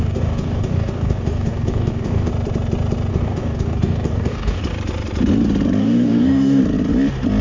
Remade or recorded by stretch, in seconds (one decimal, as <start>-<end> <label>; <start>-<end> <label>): 0.0-2.3 remade; 2.3-3.1 recorded; 3.1-4.6 remade; 4.6-5.8 recorded; 5.8-6.6 remade; 6.6-7.4 recorded